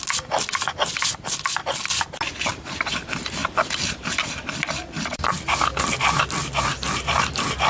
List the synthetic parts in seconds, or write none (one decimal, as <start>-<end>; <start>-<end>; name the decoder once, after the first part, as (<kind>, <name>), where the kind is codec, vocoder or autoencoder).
none